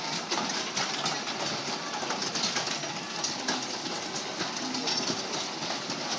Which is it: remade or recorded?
recorded